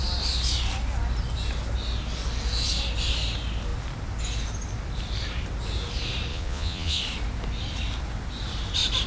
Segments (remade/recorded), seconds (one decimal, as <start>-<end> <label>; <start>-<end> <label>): 0.0-6.3 recorded; 6.3-7.0 remade; 7.0-9.1 recorded